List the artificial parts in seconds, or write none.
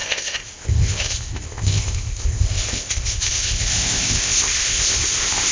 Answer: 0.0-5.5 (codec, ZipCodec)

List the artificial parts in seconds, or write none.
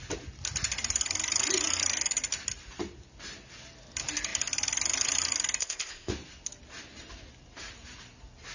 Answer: 5.6-6.1 (codec, ZipCodec)